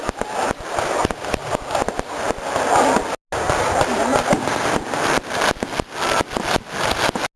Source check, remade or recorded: recorded